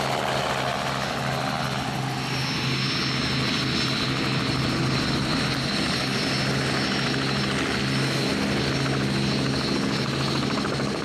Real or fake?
real